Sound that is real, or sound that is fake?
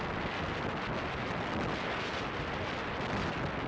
real